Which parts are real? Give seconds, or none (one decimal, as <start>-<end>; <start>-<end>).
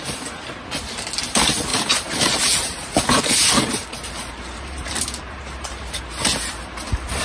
0.0-1.7; 6.0-7.2